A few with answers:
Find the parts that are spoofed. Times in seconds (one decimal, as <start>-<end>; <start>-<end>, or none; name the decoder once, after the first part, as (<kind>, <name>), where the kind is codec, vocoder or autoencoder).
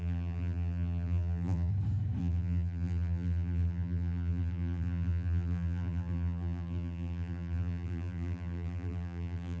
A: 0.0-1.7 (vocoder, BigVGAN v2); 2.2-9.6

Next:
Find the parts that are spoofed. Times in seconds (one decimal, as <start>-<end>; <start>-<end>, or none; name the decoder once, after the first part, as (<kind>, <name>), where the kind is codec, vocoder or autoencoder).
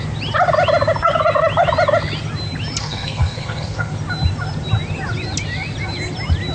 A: 2.8-3.9 (codec, SNAC)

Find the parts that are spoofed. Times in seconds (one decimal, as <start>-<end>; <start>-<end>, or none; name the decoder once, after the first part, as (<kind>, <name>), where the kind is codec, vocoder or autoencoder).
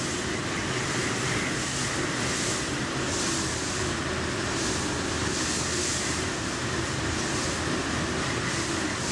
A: none